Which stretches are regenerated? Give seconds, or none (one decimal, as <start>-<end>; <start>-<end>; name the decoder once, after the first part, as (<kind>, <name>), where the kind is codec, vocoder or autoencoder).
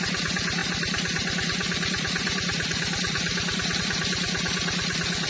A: 0.0-5.3 (vocoder, BigVGAN v2)